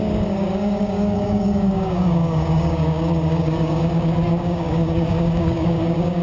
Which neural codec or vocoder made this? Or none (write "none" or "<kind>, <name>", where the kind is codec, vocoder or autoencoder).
codec, DAC